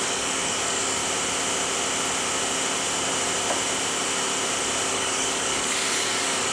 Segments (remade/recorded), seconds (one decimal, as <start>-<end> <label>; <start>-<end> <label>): 0.0-1.0 remade; 1.0-4.9 recorded; 4.9-6.5 remade